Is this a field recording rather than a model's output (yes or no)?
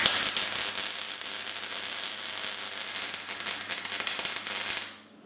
yes